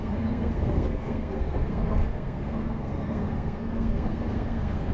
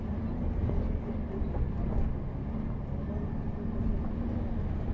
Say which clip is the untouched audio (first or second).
second